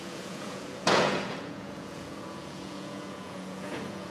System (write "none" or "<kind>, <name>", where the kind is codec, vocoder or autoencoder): vocoder, Vocos